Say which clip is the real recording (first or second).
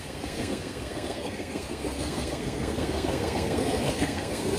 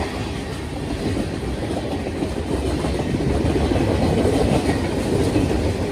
second